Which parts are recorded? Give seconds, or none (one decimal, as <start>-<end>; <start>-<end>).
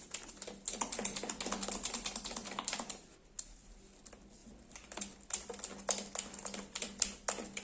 0.0-7.6